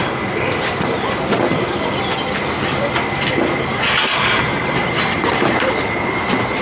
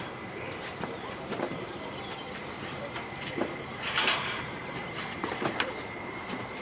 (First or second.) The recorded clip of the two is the first